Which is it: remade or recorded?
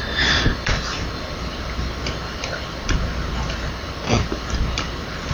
remade